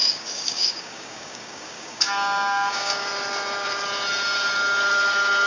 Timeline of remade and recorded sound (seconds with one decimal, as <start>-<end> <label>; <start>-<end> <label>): 0.0-3.1 remade; 3.1-5.5 recorded